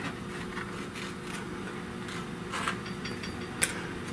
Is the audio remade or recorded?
recorded